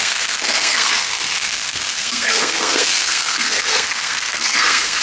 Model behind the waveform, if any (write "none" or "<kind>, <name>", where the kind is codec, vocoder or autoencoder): codec, SNAC